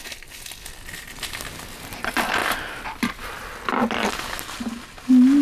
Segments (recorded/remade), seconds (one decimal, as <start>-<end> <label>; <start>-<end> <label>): 0.0-5.4 recorded